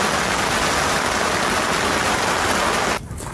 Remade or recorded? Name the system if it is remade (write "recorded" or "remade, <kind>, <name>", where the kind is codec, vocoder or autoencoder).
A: recorded